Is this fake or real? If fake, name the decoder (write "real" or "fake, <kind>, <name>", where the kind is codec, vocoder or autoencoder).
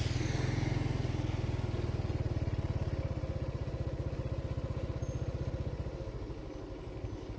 real